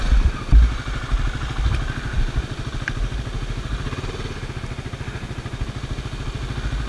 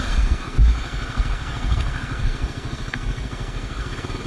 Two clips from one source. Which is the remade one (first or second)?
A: second